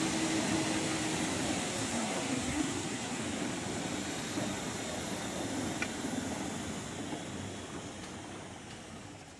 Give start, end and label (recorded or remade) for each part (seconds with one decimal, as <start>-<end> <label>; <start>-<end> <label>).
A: 0.0-1.6 recorded; 1.6-3.2 remade; 3.2-9.4 recorded